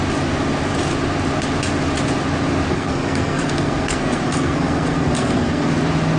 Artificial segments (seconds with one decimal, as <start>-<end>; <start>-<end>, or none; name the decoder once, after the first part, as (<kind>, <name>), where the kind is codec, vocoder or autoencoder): 2.7-5.7 (codec, SNAC)